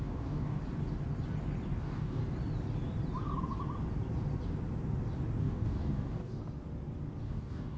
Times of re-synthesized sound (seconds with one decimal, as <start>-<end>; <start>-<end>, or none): 0.0-0.6; 1.8-2.2; 5.4-6.4; 7.2-7.8